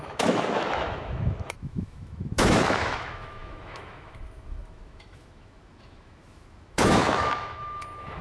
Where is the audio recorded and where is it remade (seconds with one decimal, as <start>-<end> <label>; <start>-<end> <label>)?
0.0-8.2 remade